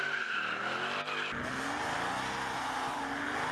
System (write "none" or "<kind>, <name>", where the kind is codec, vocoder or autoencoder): none